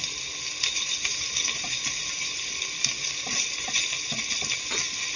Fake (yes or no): no